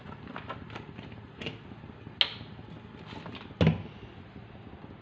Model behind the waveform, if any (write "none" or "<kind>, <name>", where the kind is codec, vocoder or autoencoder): none